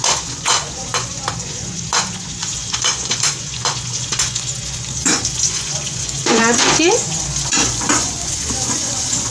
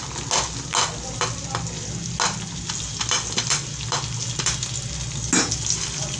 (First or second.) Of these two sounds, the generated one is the first